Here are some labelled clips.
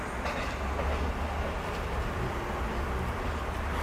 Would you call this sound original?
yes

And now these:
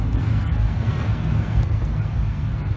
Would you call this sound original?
no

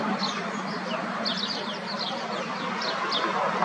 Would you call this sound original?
yes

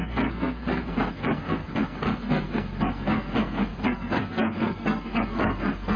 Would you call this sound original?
no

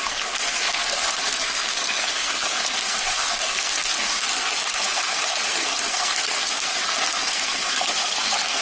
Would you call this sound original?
no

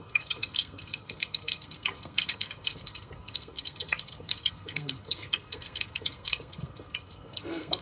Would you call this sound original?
no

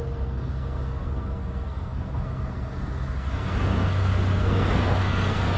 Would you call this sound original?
no